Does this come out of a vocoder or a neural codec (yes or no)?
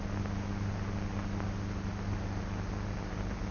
no